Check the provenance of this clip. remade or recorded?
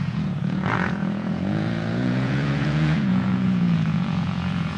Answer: remade